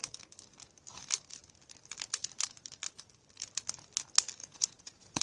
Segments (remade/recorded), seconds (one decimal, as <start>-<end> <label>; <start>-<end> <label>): 0.0-4.4 recorded; 4.4-5.2 remade